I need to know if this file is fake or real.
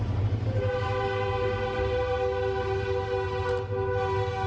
real